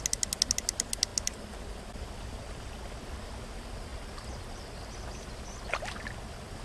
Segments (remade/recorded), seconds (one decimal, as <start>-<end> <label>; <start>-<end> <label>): 0.0-6.6 recorded